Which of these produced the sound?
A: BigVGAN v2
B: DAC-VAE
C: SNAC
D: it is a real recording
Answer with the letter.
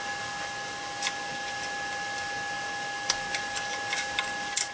D